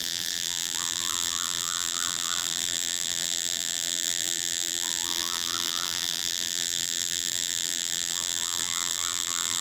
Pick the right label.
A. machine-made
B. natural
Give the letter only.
A